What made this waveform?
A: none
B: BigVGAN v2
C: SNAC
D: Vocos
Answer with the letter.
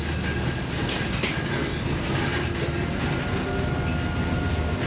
A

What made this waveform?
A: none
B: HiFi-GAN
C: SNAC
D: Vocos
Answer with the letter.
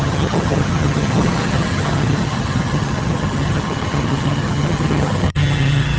B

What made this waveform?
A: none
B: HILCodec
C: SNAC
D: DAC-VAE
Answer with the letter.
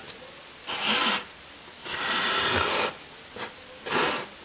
A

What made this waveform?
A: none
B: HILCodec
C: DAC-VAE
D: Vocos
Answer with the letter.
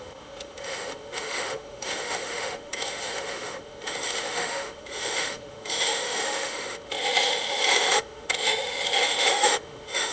C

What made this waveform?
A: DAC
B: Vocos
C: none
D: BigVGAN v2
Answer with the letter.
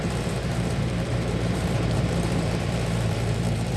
D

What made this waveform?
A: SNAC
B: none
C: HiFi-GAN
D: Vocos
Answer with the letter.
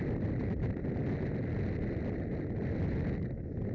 B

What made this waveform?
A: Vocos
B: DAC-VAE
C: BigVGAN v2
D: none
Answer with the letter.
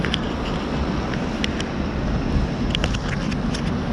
D